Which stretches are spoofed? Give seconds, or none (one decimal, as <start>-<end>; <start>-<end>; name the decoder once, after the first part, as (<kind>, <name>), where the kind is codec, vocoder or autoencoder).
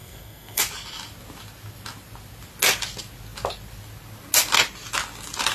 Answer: 0.0-0.6 (codec, SNAC)